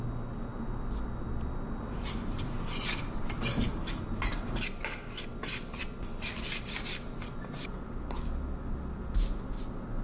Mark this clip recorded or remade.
recorded